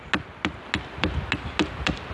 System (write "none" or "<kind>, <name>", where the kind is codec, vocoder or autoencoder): none